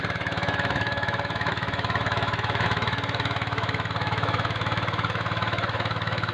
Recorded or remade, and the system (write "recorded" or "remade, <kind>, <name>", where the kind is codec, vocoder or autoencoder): remade, autoencoder, DAC-VAE